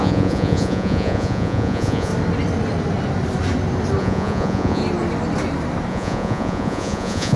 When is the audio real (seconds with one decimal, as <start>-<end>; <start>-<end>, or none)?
2.1-4.0; 4.8-5.9